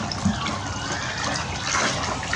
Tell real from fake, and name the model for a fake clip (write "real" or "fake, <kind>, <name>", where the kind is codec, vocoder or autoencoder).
real